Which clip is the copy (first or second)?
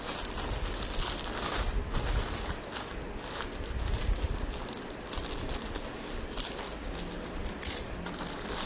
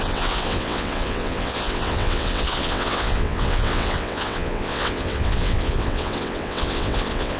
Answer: second